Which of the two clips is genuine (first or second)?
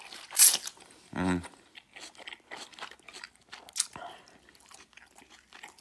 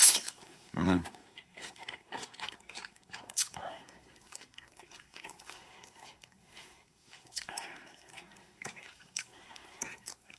first